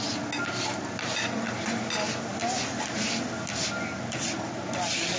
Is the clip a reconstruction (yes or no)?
no